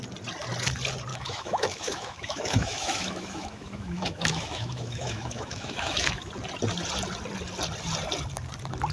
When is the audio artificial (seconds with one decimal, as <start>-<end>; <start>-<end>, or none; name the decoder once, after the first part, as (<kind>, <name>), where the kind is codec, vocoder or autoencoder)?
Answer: 1.1-6.3 (autoencoder, DAC-VAE)